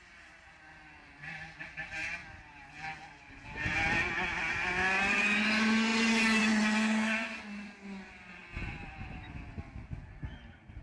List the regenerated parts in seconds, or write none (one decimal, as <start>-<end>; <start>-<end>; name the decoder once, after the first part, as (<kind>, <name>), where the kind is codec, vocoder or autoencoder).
none

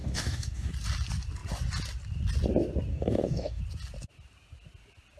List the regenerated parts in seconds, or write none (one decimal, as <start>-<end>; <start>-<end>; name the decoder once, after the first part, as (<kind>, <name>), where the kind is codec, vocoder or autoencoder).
0.0-0.7 (codec, DAC); 2.9-3.6

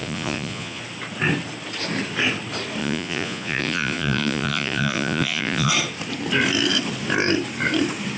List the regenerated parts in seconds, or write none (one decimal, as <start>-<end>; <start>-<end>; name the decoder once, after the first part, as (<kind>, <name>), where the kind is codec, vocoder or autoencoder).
0.0-0.8 (vocoder, Vocos); 2.8-5.7

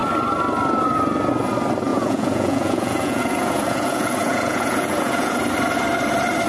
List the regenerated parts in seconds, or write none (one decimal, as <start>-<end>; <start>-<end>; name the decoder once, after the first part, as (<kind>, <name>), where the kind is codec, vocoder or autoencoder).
1.9-5.4 (vocoder, Vocos)

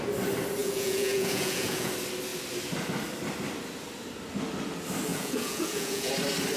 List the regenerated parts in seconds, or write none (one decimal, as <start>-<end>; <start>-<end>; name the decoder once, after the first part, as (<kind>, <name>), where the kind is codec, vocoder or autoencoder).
0.6-1.9 (vocoder, Vocos); 5.1-6.1